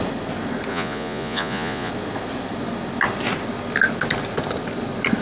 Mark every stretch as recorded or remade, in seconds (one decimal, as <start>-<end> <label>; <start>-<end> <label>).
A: 0.0-0.7 recorded; 0.7-1.9 remade; 1.9-5.2 recorded